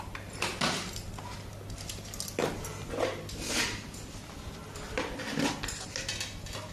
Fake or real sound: real